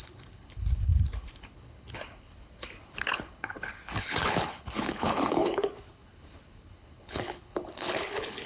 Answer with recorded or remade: remade